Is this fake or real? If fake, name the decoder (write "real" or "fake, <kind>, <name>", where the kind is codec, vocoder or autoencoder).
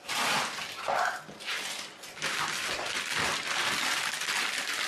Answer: fake, vocoder, BigVGAN v2